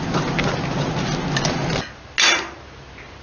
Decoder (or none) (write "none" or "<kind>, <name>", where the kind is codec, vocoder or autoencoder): none